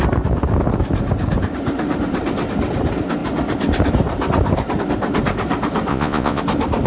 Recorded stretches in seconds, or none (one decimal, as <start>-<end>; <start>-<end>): 0.0-5.9; 6.4-6.9